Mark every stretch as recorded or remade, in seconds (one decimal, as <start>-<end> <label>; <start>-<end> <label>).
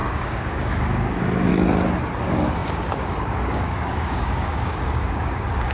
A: 0.0-1.5 remade; 1.5-2.2 recorded; 2.2-5.7 remade